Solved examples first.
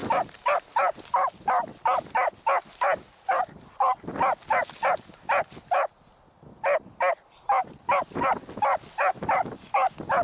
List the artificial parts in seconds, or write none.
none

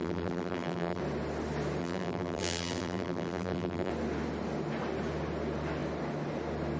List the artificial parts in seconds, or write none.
0.0-1.0 (vocoder, BigVGAN v2); 1.8-3.9

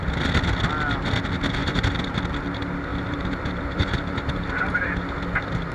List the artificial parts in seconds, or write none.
1.6-2.2 (vocoder, BigVGAN v2); 2.9-4.9

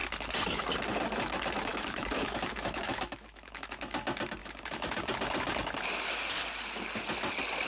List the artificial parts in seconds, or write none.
1.7-3.8 (autoencoder, DAC-VAE); 4.4-5.0

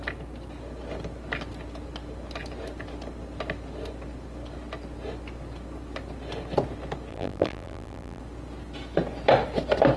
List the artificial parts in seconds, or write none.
7.1-8.2 (vocoder, BigVGAN v2)

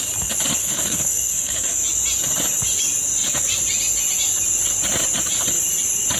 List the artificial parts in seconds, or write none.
0.6-1.8 (codec, SNAC)